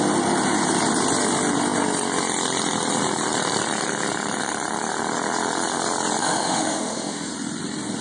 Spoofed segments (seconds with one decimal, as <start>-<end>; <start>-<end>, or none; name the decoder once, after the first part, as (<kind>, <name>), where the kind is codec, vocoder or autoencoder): 6.2-7.3 (autoencoder, DAC-VAE)